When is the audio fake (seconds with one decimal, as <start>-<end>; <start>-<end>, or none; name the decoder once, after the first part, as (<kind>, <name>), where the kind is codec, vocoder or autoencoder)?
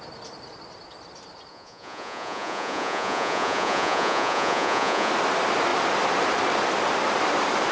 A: 1.5-5.1 (vocoder, Vocos)